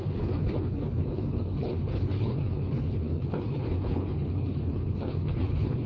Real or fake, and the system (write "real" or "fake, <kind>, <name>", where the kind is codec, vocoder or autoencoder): fake, codec, HILCodec